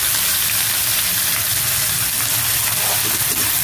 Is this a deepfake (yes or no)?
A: no